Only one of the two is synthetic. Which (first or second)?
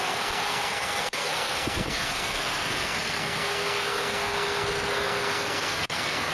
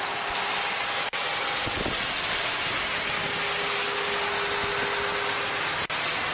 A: first